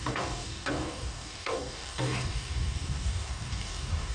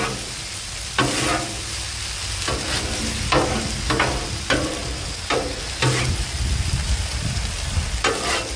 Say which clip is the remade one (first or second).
first